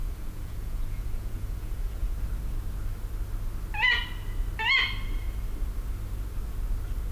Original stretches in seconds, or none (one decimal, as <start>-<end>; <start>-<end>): 2.1-7.1